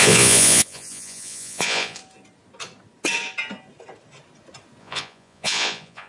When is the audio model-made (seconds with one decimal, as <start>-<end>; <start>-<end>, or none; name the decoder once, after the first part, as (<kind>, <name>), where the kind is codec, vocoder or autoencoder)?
0.0-2.0 (vocoder, Vocos); 4.8-6.1